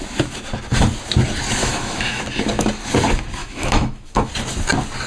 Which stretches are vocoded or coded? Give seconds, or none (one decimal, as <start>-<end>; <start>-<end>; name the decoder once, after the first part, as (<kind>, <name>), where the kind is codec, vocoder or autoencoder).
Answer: 1.6-2.2 (autoencoder, DAC-VAE); 3.4-4.3